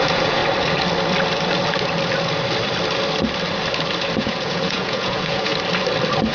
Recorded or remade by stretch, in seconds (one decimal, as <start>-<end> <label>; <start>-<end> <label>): 0.0-0.4 remade; 0.4-4.2 recorded; 4.2-5.5 remade; 5.5-6.3 recorded